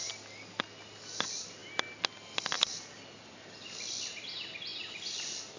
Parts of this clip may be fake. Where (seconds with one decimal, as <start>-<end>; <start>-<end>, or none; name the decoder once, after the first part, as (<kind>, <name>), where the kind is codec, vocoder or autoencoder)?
none